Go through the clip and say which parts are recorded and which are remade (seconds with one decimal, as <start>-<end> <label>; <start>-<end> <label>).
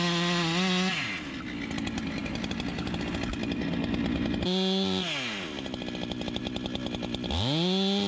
0.0-8.1 recorded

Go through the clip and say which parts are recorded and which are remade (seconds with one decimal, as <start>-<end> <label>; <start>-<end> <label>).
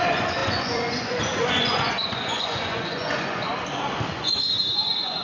0.0-3.5 remade; 3.5-4.1 recorded; 4.1-5.2 remade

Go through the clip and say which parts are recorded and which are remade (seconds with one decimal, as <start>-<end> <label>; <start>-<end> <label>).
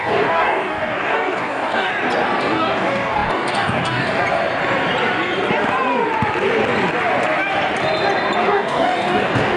0.0-1.9 remade; 1.9-2.4 recorded; 2.4-4.2 remade; 4.2-8.4 recorded; 8.4-9.6 remade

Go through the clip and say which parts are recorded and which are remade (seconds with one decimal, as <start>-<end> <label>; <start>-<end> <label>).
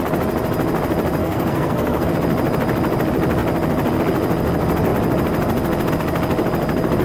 0.0-1.2 recorded; 1.2-2.1 remade; 2.1-7.0 recorded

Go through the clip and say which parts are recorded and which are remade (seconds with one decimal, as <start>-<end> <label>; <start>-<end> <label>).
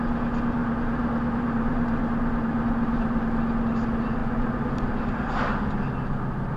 0.0-0.6 recorded; 0.6-3.4 remade; 3.4-6.6 recorded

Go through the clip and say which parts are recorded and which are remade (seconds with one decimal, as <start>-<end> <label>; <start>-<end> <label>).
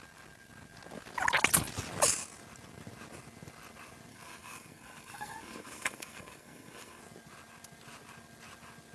0.0-4.1 recorded; 4.1-7.0 remade; 7.0-8.9 recorded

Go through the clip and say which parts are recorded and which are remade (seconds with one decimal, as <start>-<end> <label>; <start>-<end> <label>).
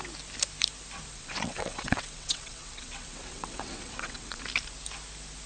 0.0-1.1 recorded; 1.1-4.4 remade; 4.4-5.5 recorded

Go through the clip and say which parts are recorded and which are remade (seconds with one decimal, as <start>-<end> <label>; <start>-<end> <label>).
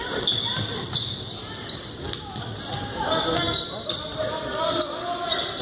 0.0-5.6 recorded